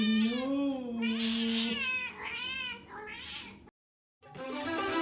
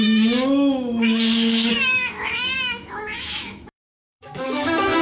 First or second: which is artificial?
second